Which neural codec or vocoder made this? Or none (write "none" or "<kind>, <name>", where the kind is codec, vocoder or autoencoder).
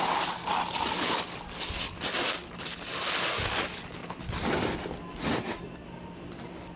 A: none